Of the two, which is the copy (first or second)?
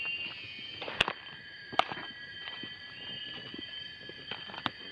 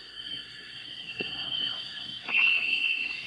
second